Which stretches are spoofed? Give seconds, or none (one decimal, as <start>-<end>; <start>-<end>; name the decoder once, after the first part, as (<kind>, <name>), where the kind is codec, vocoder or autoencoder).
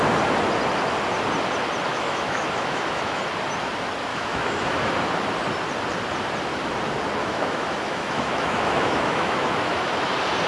1.9-3.2 (autoencoder, DAC-VAE); 4.1-4.9; 7.2-10.1